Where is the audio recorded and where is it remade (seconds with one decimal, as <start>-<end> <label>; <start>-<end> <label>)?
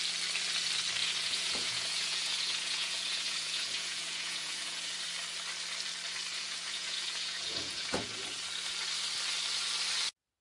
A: 0.0-1.0 recorded; 1.0-4.9 remade; 4.9-6.4 recorded; 6.4-8.2 remade; 8.2-10.4 recorded